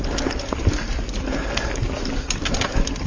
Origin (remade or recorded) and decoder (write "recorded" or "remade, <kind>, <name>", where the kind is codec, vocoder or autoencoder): recorded